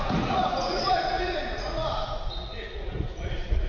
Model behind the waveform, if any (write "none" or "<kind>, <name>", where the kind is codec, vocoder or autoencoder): vocoder, Vocos